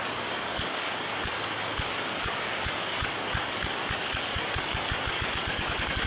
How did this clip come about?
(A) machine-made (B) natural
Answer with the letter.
A